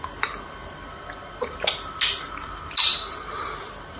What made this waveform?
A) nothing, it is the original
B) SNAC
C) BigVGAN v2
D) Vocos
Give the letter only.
A